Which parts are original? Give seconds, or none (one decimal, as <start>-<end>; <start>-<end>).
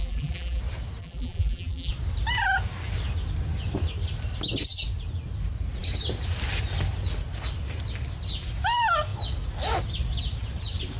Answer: 0.6-1.0; 1.9-11.0